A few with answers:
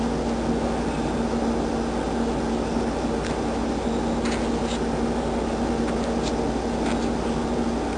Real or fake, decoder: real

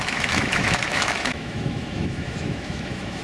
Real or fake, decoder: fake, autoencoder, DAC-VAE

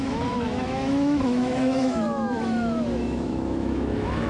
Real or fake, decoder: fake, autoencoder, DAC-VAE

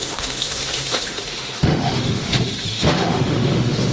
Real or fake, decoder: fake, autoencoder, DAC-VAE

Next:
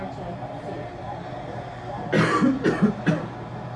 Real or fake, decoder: real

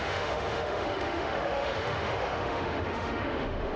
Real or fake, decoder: fake, autoencoder, DAC-VAE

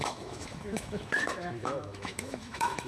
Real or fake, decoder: fake, autoencoder, DAC-VAE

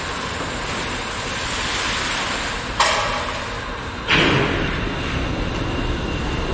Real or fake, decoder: real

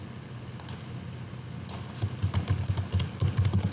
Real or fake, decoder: real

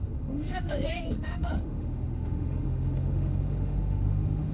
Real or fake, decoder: fake, autoencoder, DAC-VAE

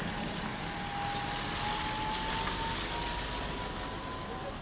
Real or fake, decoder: real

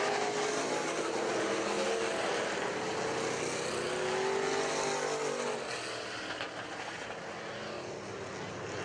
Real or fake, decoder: real